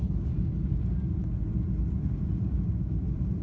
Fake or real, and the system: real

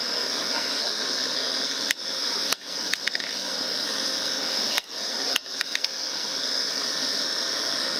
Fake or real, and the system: fake, codec, SNAC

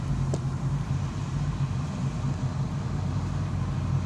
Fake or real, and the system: real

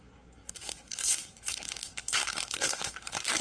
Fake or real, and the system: fake, codec, SNAC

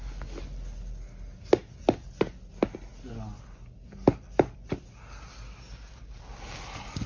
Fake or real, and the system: real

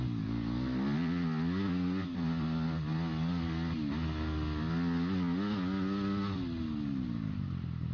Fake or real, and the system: real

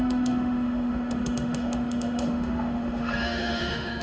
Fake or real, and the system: fake, autoencoder, DAC-VAE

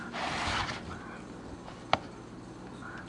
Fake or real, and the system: real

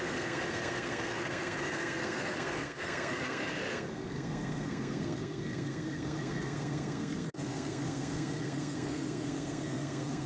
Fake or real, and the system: fake, codec, SNAC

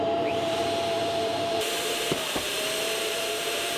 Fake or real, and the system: fake, vocoder, BigVGAN v2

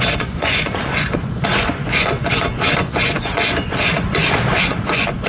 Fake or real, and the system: fake, vocoder, Vocos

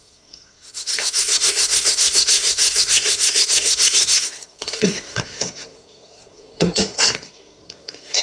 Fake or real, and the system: fake, codec, SNAC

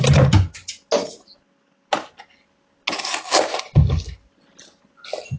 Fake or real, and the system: real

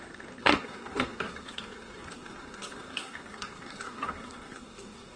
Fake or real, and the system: fake, codec, SNAC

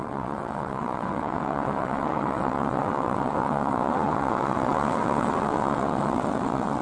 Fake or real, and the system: fake, vocoder, WaveNeXt